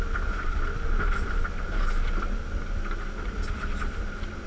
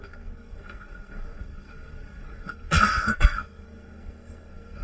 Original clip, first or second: first